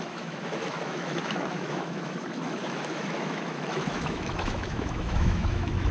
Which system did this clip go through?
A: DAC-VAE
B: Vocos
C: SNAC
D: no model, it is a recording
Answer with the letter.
A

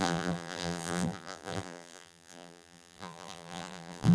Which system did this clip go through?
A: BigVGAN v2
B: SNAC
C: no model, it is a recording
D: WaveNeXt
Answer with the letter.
A